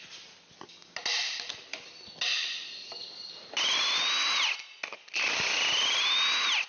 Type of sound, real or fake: real